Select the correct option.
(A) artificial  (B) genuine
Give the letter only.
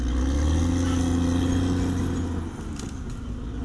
B